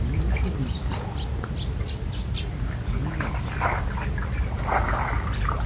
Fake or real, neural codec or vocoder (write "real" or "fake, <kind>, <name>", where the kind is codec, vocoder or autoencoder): real